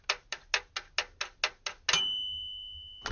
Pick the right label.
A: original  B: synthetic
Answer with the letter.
A